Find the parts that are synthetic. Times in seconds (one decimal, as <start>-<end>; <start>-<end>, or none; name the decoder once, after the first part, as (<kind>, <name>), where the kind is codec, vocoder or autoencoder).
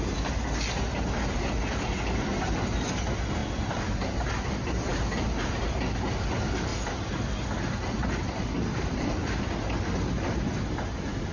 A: none